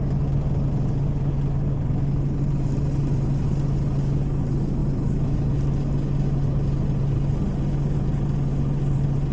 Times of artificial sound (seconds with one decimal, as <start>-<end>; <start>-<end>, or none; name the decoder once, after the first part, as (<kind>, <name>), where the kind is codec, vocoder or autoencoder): none